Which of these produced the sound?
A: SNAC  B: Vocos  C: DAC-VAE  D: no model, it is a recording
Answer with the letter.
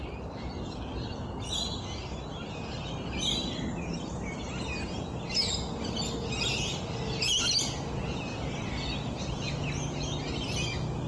D